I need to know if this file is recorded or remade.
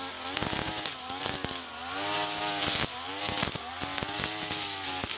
recorded